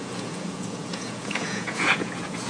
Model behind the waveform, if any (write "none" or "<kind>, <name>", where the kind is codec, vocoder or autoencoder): vocoder, Vocos